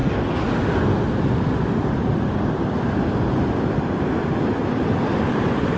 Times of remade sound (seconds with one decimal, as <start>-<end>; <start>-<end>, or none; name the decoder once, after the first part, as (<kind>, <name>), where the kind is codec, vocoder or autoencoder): 2.1-5.8 (vocoder, BigVGAN v2)